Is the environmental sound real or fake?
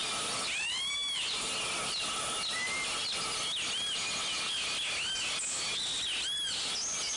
real